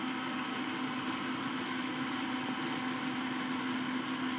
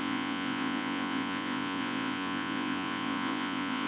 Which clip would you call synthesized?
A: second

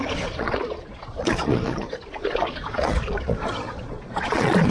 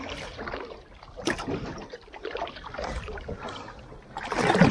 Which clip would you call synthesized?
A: first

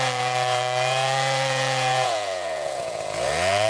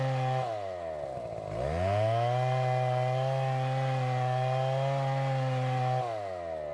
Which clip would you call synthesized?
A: first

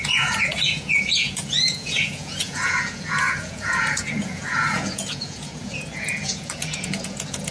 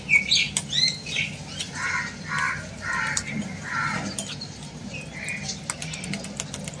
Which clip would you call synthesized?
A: first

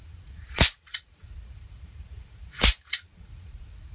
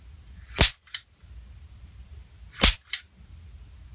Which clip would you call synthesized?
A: first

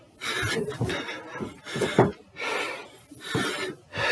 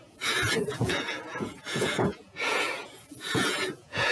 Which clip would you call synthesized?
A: second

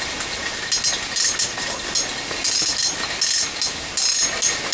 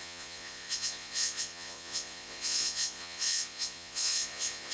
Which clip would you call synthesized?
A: second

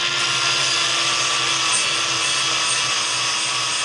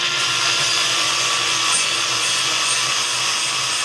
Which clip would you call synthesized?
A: second